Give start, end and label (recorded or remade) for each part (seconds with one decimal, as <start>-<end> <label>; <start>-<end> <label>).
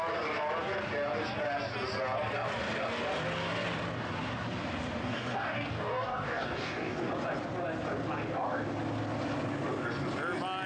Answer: 0.0-5.0 recorded; 5.0-7.1 remade; 7.1-10.7 recorded